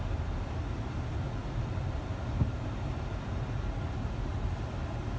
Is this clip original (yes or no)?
yes